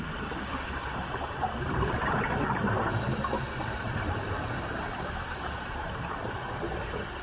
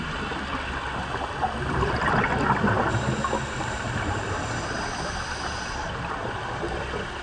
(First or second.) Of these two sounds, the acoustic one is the second